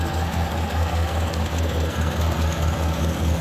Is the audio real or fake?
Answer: fake